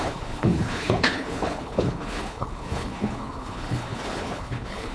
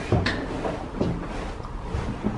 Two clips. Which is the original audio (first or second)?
second